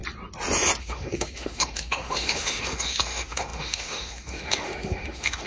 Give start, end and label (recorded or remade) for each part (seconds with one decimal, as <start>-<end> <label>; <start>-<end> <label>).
0.0-0.8 recorded; 0.8-5.5 remade